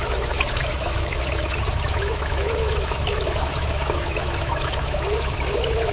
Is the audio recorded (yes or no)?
no